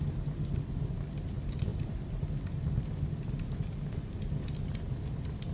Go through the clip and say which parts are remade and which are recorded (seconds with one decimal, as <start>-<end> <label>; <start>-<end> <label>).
0.0-5.5 recorded